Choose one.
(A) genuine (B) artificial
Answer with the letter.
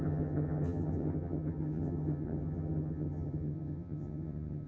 B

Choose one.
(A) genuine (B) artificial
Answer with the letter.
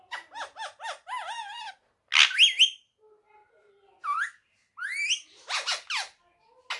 A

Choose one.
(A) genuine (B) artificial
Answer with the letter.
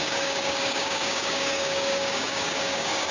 B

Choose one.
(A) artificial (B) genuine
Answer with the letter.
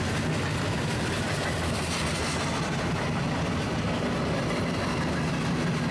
B